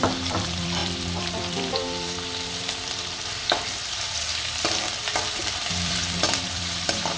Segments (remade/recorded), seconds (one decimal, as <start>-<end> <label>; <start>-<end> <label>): 0.0-7.2 remade